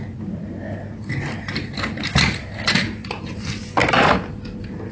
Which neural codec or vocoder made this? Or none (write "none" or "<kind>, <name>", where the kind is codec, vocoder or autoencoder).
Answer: none